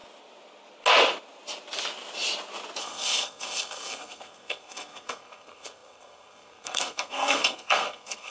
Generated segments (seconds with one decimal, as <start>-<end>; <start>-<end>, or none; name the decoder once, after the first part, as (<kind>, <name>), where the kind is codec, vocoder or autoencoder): 2.8-8.3 (codec, SNAC)

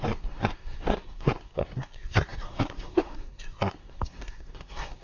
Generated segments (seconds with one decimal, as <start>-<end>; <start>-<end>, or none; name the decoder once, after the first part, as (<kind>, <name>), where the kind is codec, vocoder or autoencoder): 0.0-5.0 (codec, SNAC)

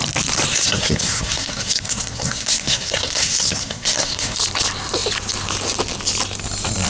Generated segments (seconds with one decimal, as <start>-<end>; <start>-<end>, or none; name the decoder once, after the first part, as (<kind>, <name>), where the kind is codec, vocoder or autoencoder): 0.5-4.4 (codec, SNAC)

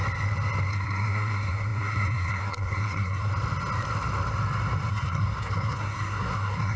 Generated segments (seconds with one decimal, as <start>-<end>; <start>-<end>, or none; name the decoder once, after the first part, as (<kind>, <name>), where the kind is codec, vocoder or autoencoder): 0.7-3.3 (codec, SNAC); 4.9-6.8

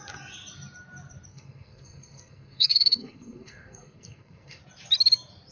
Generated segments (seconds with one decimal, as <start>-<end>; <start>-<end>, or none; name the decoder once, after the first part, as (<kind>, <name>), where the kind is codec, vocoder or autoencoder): 1.3-4.6 (codec, SNAC)

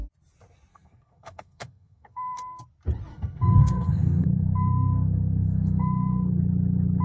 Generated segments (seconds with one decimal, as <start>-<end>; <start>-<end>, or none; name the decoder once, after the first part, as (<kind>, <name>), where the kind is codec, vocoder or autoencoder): 0.7-2.6 (codec, SNAC); 3.1-6.4